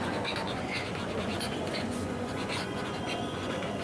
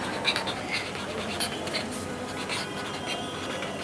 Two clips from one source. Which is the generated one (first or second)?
first